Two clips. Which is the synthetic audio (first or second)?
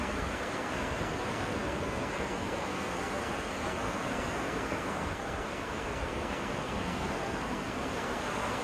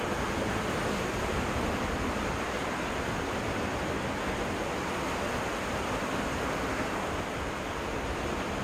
first